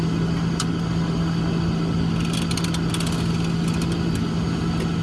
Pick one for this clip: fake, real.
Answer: real